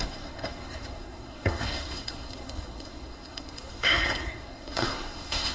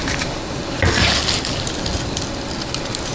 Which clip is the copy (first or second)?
first